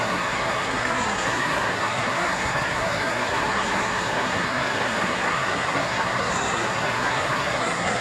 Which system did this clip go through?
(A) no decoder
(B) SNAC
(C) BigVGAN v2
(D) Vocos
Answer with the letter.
B